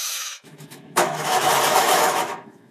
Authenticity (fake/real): fake